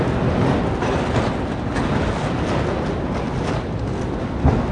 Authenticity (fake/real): real